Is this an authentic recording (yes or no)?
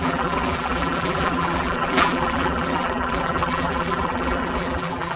no